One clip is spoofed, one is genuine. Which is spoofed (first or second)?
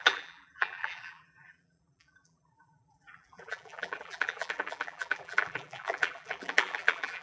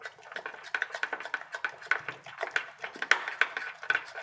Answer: first